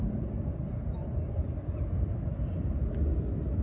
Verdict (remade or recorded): recorded